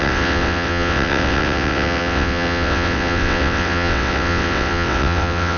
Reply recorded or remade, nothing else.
remade